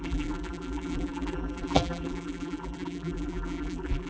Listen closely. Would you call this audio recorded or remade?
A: remade